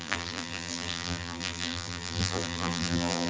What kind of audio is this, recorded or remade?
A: remade